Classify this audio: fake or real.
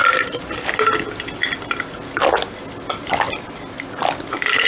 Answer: real